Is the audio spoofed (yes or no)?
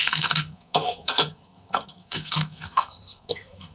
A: yes